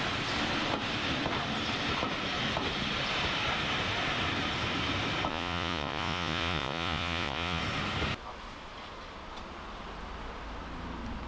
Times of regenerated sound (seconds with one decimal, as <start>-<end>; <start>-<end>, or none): 5.3-7.6